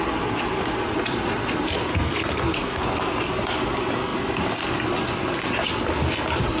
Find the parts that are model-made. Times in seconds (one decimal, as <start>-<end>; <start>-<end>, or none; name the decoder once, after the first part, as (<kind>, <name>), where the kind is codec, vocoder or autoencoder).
1.9-2.8 (codec, SNAC)